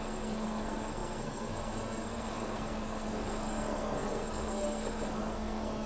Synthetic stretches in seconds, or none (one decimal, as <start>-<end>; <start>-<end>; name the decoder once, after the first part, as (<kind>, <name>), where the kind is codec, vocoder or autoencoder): 0.0-5.9 (codec, SNAC)